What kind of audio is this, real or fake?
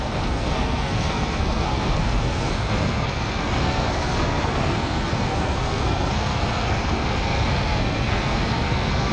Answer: fake